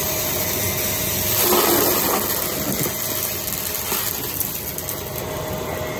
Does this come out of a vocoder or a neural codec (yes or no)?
no